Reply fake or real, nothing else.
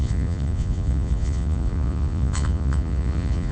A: fake